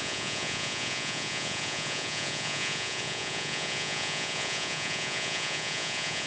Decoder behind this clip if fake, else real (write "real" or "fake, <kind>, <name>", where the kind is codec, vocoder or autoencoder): fake, vocoder, Vocos